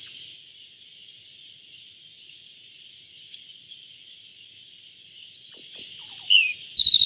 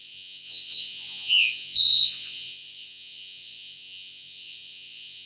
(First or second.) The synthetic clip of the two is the second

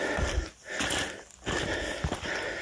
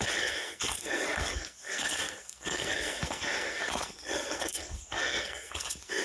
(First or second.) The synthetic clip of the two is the second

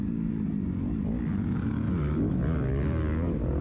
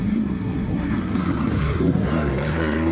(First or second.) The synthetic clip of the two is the second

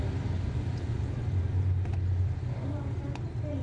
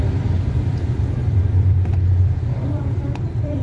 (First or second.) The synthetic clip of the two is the second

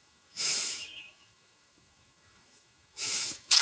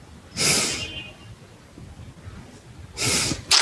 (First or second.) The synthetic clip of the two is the first